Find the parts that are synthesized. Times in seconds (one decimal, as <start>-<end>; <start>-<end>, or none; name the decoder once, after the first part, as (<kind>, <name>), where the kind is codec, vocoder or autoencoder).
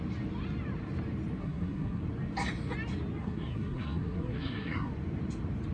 1.4-2.0 (codec, SNAC); 3.2-4.9